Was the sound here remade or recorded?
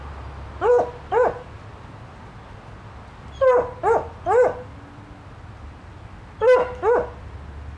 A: recorded